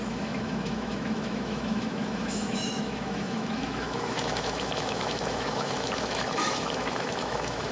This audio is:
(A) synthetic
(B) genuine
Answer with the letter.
A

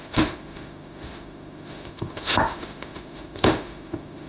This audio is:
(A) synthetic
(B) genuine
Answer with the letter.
A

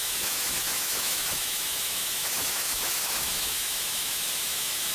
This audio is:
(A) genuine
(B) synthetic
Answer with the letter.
B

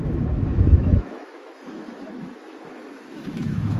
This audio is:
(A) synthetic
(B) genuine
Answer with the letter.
A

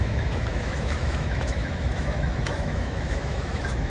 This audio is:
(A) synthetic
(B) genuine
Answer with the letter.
A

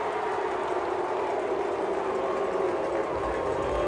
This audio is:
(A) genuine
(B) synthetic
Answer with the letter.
A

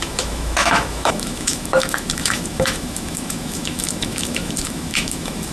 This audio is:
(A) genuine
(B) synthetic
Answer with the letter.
B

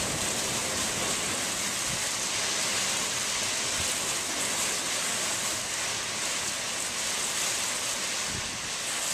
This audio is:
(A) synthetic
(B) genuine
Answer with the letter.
B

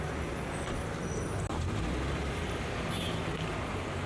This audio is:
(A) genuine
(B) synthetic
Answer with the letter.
A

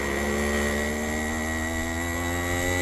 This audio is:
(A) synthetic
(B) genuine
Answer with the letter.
B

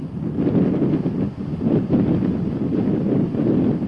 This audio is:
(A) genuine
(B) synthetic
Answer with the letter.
A